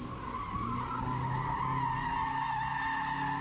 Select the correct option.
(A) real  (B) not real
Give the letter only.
A